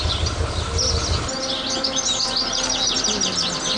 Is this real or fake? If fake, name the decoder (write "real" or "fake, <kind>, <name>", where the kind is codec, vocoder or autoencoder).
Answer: real